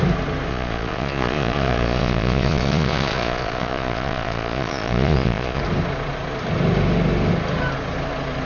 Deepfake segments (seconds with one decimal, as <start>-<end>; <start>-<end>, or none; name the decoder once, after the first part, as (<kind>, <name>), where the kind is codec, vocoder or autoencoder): 0.5-5.6 (vocoder, Vocos)